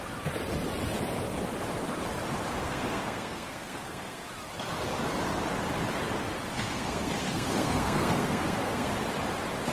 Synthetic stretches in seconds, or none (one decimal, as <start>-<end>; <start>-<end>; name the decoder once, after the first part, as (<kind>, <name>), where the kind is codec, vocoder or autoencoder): 2.6-4.2 (codec, SNAC); 6.5-8.9